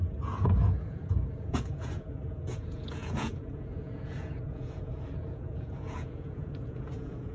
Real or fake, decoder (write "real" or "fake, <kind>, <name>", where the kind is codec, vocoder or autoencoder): fake, vocoder, Vocos